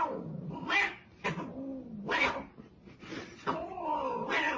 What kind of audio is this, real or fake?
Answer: real